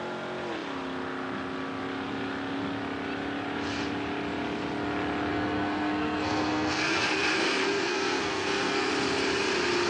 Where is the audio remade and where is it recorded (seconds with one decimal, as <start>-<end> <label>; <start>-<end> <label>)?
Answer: 0.0-5.3 recorded; 5.3-8.9 remade; 8.9-9.9 recorded